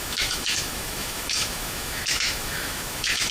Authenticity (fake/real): fake